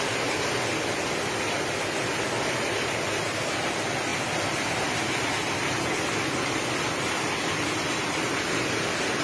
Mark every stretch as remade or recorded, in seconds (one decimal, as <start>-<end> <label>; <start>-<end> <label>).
0.0-9.2 recorded